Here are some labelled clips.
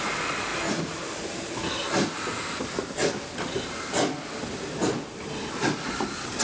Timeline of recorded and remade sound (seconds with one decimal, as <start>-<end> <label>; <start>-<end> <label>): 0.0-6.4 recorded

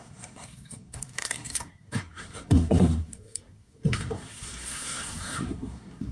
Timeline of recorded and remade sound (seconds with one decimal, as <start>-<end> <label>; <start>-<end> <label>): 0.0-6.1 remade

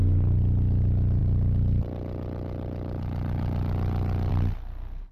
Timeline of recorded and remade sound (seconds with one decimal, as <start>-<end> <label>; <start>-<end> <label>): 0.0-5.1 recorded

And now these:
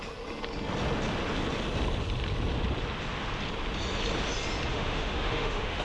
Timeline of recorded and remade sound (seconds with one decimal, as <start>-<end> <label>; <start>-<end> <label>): 0.0-4.7 recorded; 4.7-5.8 remade